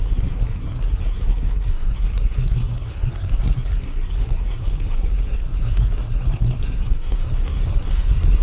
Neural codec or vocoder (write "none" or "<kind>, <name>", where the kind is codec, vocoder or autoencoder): codec, SNAC